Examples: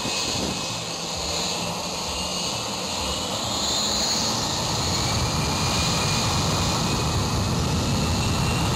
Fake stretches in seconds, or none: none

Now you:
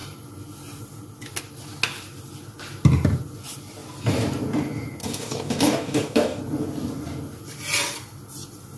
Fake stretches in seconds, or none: 5.0-6.4 (codec, DAC)

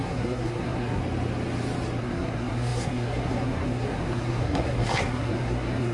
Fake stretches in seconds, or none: 0.0-1.0 (codec, SNAC); 2.0-5.9

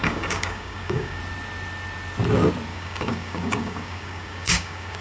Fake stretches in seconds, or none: 0.0-1.2 (codec, DAC); 2.7-5.0